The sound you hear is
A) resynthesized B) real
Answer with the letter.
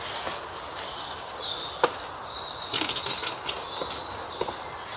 B